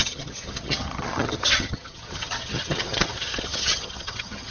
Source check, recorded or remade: remade